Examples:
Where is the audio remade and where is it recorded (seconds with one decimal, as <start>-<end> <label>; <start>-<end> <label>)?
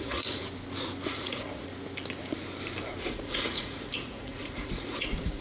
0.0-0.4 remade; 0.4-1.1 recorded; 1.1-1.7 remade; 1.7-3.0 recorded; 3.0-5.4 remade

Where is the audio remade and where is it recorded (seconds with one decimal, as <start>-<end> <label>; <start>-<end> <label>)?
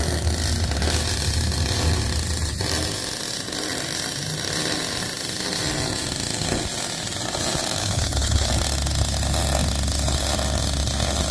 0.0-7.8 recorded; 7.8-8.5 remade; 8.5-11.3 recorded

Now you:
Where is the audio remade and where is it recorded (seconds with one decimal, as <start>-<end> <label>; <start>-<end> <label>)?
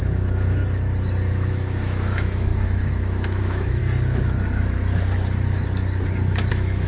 0.0-0.6 remade; 0.6-1.3 recorded; 1.3-3.8 remade; 3.8-6.5 recorded; 6.5-6.9 remade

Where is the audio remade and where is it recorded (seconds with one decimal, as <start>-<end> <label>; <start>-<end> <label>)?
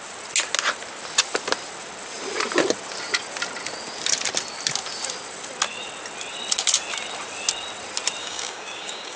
0.0-8.2 recorded; 8.2-9.2 remade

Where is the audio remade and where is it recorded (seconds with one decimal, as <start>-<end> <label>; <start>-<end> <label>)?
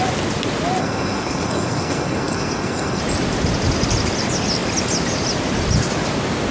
0.0-0.8 recorded; 0.8-3.0 remade; 3.0-6.5 recorded